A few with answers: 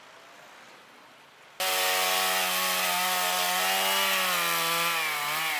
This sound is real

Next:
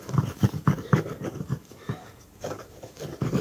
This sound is fake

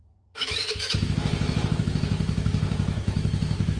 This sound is fake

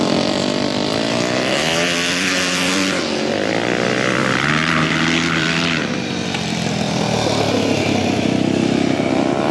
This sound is fake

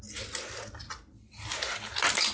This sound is real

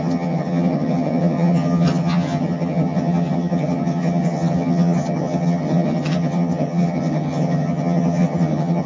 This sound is fake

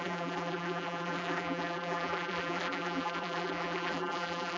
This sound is fake